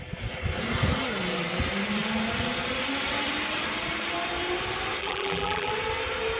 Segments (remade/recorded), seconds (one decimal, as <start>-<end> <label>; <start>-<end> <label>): 0.0-5.0 recorded; 5.0-5.7 remade; 5.7-6.4 recorded